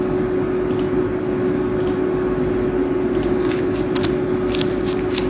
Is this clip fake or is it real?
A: real